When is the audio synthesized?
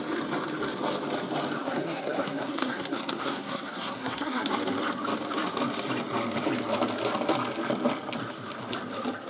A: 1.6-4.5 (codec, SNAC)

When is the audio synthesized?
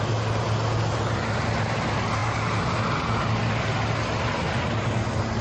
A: none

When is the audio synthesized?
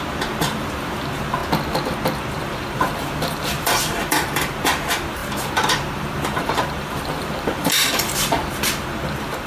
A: 0.0-1.4 (vocoder, BigVGAN v2); 2.2-9.5